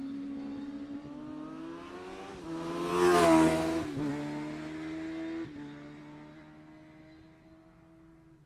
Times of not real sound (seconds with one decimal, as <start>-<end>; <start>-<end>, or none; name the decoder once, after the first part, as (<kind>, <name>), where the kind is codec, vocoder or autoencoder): none

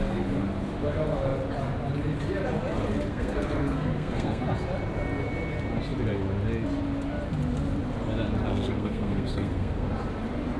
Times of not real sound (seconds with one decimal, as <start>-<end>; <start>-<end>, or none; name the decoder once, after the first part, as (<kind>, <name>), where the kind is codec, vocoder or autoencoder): 3.1-4.4 (codec, SNAC); 8.5-9.9

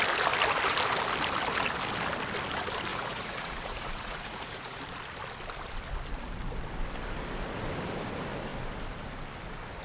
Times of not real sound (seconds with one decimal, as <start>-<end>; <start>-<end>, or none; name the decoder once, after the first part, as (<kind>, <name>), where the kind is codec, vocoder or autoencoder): 2.9-4.8 (vocoder, Vocos)